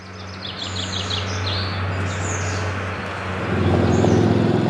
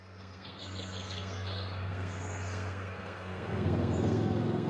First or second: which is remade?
second